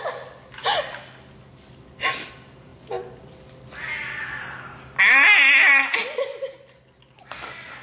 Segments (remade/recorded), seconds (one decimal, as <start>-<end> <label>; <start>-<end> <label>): 0.0-7.8 recorded